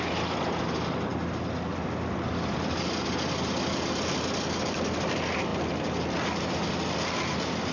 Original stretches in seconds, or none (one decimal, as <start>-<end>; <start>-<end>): 0.0-7.7

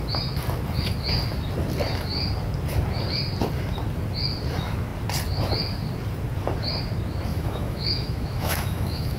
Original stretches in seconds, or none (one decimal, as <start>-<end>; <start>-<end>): 0.0-7.3

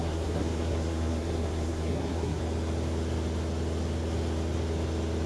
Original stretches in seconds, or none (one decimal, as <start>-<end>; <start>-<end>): 2.4-5.3

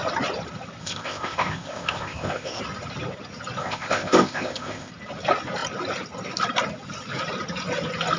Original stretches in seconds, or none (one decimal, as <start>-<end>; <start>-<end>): 0.0-0.8; 2.6-3.6; 4.9-8.2

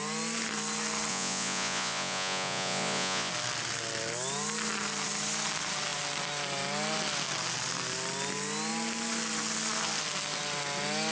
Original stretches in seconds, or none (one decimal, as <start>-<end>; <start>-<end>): 0.0-1.1; 3.3-11.1

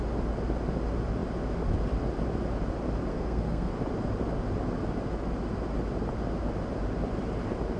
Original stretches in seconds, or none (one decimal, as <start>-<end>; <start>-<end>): 0.0-3.1; 3.7-7.8

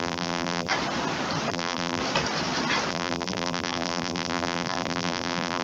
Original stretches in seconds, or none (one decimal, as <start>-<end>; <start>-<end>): 0.7-1.5; 2.0-2.9